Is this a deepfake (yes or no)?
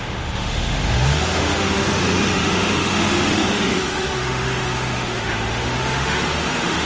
yes